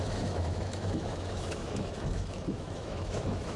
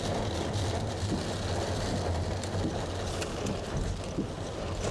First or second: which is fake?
first